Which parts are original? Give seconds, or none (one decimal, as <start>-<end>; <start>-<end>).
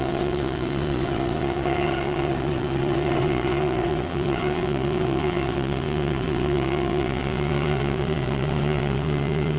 none